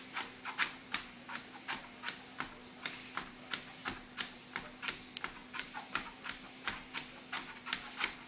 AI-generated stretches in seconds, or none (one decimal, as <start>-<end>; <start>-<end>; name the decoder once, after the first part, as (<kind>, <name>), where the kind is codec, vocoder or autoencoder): 0.8-1.8 (vocoder, BigVGAN v2); 5.4-6.5